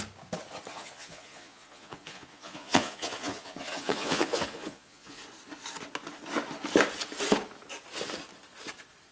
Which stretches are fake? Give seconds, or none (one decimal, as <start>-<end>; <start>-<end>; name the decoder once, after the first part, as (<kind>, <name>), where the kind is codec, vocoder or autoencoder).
0.7-5.2 (vocoder, Vocos)

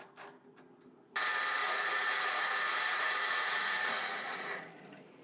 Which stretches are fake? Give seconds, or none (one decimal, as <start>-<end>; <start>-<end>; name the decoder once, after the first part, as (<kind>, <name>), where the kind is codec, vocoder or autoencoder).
1.6-4.6 (vocoder, Vocos)

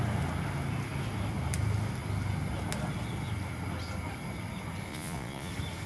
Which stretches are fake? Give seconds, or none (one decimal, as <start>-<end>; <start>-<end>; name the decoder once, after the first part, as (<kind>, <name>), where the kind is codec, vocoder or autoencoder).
4.9-5.5 (vocoder, Vocos)

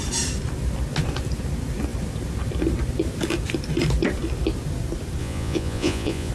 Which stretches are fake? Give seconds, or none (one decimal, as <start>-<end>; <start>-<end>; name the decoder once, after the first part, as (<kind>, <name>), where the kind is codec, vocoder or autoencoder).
5.2-6.3 (vocoder, Vocos)

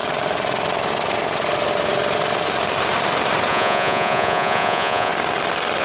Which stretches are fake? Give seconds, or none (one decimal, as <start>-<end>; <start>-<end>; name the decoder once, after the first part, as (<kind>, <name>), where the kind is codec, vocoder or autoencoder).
3.5-5.1 (vocoder, Vocos)

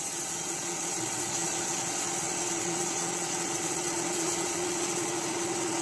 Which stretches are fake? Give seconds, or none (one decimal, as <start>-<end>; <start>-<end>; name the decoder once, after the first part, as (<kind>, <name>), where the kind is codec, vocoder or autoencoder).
0.0-5.8 (vocoder, Vocos)